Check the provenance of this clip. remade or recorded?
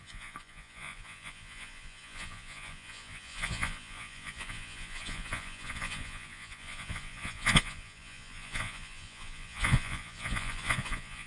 remade